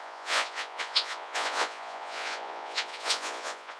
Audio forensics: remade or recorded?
remade